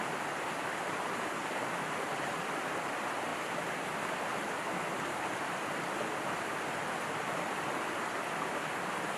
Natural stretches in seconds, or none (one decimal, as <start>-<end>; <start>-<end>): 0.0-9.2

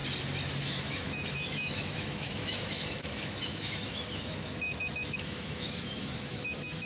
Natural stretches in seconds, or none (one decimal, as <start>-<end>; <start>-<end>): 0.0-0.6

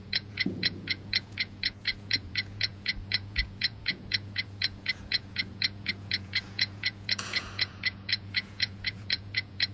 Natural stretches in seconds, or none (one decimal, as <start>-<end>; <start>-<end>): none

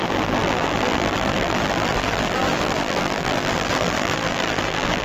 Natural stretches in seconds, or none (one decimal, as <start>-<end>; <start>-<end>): none